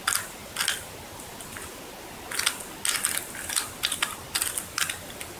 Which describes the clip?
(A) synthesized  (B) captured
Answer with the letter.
B